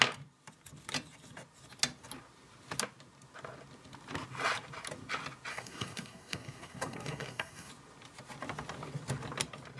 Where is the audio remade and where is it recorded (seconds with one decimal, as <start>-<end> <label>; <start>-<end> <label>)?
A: 0.0-5.5 recorded; 5.5-7.7 remade; 7.7-9.8 recorded